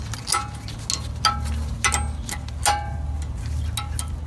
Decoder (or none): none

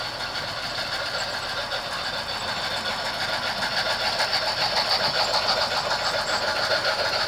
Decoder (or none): none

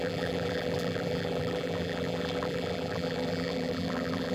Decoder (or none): vocoder, BigVGAN v2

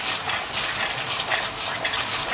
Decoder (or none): none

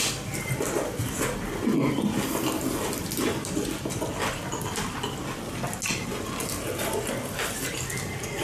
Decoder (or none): none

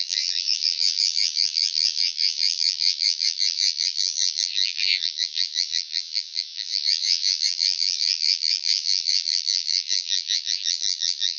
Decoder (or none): vocoder, BigVGAN v2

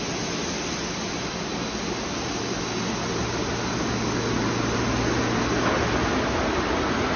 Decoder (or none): none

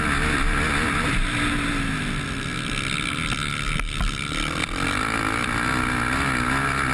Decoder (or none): none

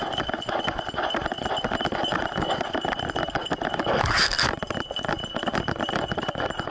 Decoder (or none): none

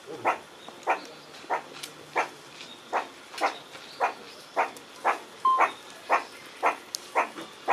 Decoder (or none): none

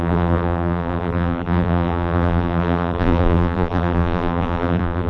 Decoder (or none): vocoder, BigVGAN v2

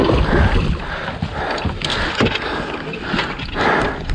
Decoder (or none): none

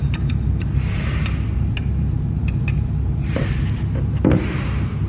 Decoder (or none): vocoder, BigVGAN v2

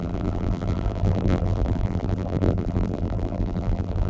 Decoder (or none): vocoder, BigVGAN v2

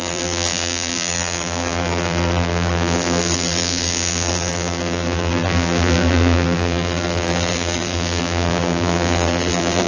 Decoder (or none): vocoder, BigVGAN v2